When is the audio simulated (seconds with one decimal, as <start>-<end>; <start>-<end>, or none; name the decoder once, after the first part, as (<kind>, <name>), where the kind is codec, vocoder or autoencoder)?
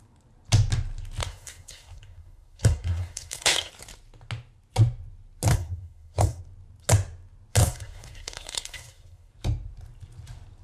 1.2-3.7 (codec, SNAC); 5.5-6.4; 7.6-9.3